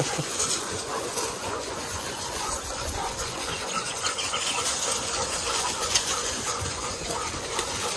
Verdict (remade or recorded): remade